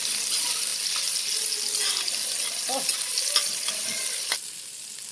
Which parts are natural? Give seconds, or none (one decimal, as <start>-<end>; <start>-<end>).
0.0-3.1; 3.7-5.1